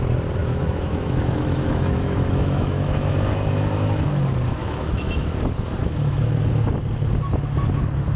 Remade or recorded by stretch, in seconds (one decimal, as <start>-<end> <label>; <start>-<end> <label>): 0.0-0.4 recorded; 0.4-3.1 remade; 3.1-4.6 recorded; 4.6-5.1 remade; 5.1-5.8 recorded; 5.8-6.4 remade; 6.4-8.2 recorded